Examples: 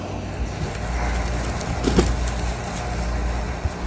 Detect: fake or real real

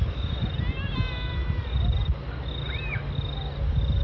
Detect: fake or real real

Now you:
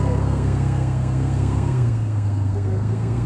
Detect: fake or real fake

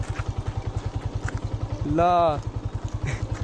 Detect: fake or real real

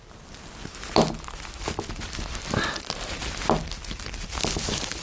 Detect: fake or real real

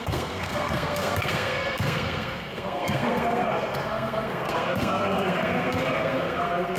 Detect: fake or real fake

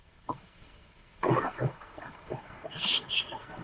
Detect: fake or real fake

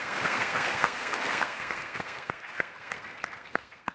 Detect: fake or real fake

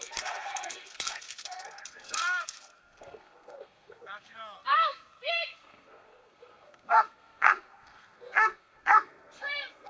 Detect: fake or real fake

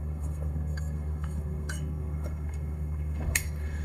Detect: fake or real fake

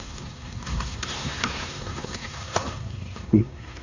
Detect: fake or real fake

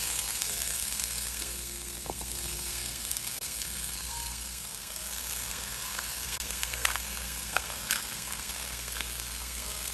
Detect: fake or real fake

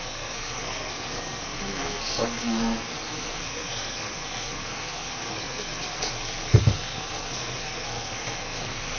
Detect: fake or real fake